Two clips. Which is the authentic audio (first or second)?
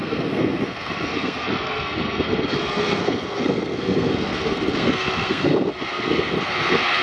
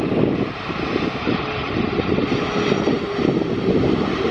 second